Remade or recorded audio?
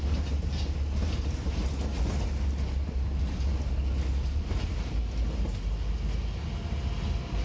recorded